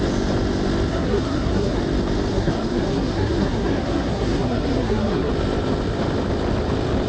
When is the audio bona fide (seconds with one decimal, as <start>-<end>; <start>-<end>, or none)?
0.0-0.9; 1.8-2.3; 5.3-7.1